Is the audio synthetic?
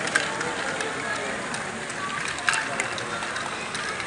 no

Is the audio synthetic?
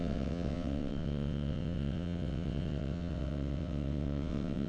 yes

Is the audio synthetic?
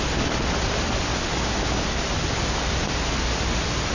no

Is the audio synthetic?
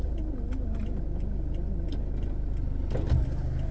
no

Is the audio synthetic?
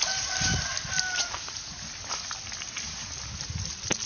no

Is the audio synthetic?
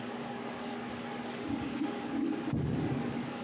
yes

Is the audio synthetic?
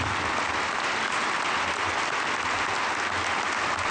no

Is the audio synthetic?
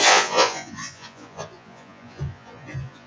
yes